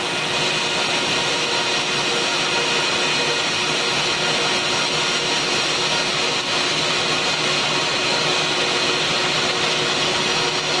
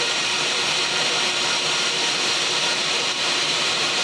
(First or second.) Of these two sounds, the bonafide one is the first